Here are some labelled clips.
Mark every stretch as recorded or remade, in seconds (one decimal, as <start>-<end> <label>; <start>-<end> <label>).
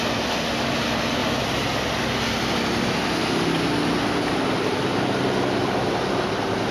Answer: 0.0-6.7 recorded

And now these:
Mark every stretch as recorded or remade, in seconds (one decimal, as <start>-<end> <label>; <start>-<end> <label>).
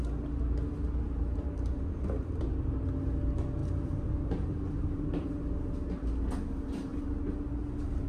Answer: 0.0-3.6 recorded; 3.6-5.3 remade; 5.3-8.1 recorded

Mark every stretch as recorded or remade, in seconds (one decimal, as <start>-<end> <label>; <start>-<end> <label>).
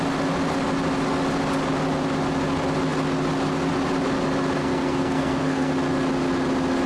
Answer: 0.0-4.6 recorded; 4.6-5.7 remade; 5.7-6.9 recorded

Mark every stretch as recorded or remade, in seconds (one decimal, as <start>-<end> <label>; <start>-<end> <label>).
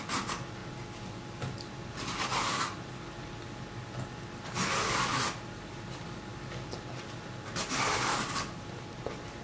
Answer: 0.0-9.4 recorded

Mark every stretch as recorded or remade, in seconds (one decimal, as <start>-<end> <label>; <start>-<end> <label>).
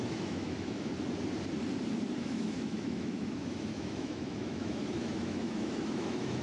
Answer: 0.0-0.9 remade; 0.9-2.2 recorded; 2.2-6.4 remade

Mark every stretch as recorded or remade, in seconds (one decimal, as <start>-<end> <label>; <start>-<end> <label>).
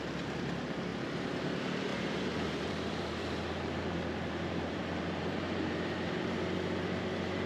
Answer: 0.0-0.9 recorded; 0.9-1.4 remade; 1.4-1.9 recorded; 1.9-6.4 remade; 6.4-7.5 recorded